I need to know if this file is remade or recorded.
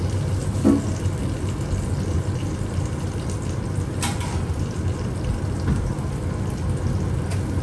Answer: recorded